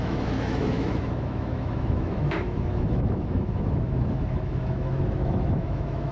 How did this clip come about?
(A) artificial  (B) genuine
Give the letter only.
A